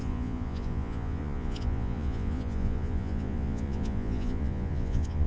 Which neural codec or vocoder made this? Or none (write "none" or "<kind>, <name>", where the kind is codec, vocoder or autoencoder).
vocoder, Vocos